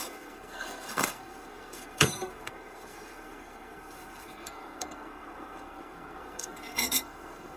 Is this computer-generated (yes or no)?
yes